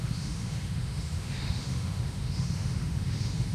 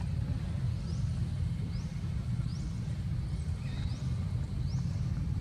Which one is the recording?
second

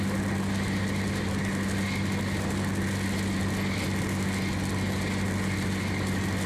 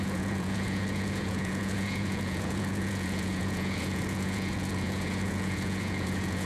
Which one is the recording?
first